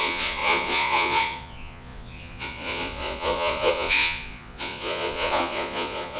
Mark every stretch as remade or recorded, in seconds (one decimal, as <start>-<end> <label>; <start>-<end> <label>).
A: 0.0-6.2 remade

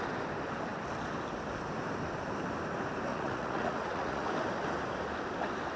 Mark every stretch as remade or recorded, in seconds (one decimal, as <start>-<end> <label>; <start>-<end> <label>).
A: 0.0-3.1 recorded; 3.1-4.3 remade; 4.3-5.8 recorded

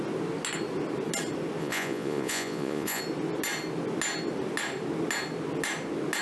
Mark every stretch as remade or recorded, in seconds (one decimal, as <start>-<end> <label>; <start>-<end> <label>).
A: 0.0-1.6 recorded; 1.6-3.0 remade; 3.0-6.2 recorded

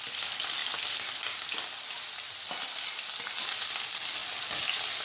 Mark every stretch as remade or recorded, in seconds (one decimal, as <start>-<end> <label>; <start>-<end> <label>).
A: 0.0-5.0 recorded

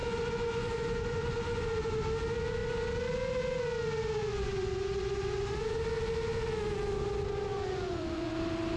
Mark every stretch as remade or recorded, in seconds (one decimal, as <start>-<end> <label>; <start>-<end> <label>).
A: 0.0-2.0 remade; 2.0-4.2 recorded; 4.2-5.8 remade; 5.8-7.5 recorded; 7.5-8.3 remade; 8.3-8.8 recorded

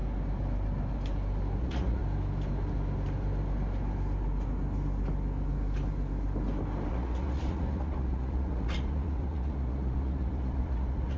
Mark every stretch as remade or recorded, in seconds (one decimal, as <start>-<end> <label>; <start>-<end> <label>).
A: 0.0-1.6 recorded; 1.6-2.0 remade; 2.0-6.9 recorded; 6.9-11.2 remade

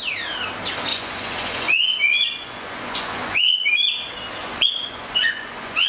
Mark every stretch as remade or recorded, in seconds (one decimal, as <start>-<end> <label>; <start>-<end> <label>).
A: 0.0-0.9 recorded; 0.9-3.7 remade; 3.7-4.4 recorded; 4.4-5.9 remade

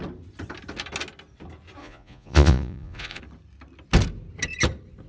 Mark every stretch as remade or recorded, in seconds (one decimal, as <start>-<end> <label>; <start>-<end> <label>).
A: 0.0-1.8 recorded; 1.8-3.2 remade; 3.2-5.1 recorded